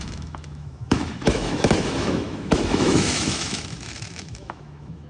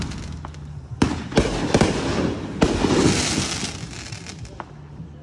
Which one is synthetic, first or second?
first